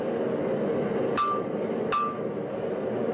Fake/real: real